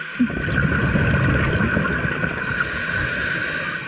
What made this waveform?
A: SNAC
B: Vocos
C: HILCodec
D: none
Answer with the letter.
D